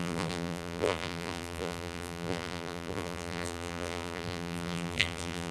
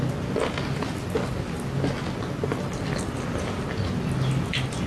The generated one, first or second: first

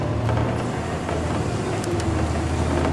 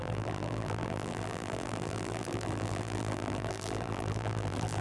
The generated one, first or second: second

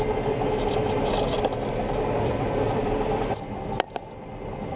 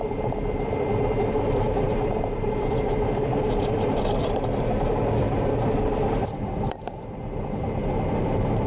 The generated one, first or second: second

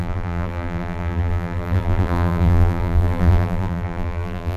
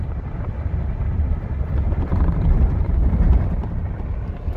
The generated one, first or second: first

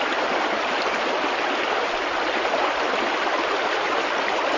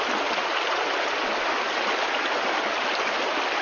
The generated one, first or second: first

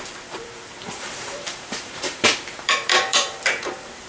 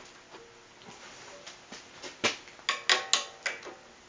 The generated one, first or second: first